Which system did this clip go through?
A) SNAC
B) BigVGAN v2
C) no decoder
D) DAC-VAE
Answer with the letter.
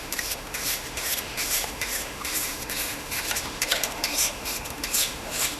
D